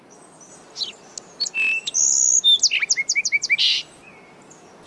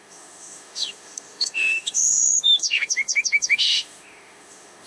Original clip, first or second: first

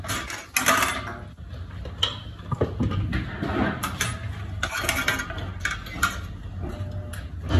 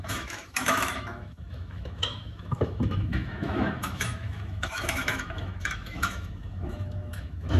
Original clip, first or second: first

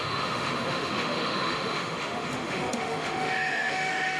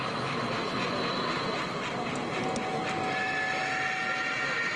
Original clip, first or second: second